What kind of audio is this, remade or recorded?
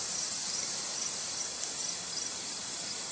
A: recorded